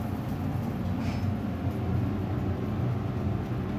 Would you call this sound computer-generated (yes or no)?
no